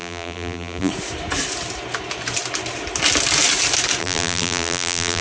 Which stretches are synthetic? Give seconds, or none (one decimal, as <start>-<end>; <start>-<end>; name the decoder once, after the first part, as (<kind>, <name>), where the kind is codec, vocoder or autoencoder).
0.0-0.9 (vocoder, BigVGAN v2); 4.0-5.2

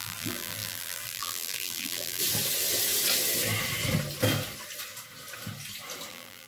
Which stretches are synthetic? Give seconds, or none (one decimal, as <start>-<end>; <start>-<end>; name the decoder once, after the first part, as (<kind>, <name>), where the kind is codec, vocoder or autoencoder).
0.0-2.2 (vocoder, BigVGAN v2); 6.1-6.5

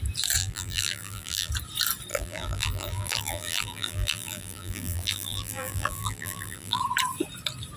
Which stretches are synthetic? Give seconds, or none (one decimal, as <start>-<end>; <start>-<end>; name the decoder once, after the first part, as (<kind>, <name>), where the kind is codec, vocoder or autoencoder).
0.4-1.5 (vocoder, BigVGAN v2); 2.1-6.8

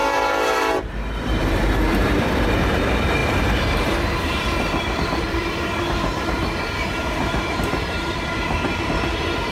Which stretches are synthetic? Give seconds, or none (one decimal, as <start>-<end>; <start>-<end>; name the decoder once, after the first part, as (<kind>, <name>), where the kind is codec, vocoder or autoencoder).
0.0-9.5 (vocoder, BigVGAN v2)

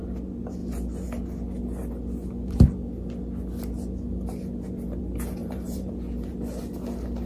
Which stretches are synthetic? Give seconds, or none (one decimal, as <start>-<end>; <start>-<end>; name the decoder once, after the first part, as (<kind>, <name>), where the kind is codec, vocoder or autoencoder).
5.4-5.9 (vocoder, BigVGAN v2)

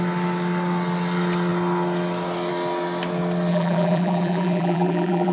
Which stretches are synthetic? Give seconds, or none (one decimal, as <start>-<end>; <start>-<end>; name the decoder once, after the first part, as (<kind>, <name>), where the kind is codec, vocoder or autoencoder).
3.5-5.3 (vocoder, BigVGAN v2)

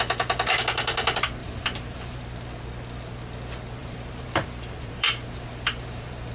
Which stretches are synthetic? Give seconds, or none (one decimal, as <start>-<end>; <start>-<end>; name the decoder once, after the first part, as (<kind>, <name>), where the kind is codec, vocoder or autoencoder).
1.4-2.2 (vocoder, BigVGAN v2); 3.8-6.3